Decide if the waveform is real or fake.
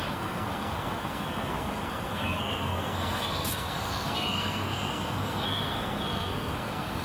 fake